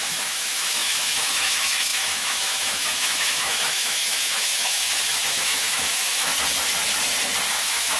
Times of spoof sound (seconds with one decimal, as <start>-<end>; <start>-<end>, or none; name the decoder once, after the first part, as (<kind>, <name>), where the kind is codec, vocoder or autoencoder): 0.0-6.3 (autoencoder, DAC-VAE); 7.5-8.0